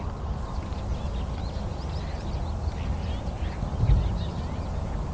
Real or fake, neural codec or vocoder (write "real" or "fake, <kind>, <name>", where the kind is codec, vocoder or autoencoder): real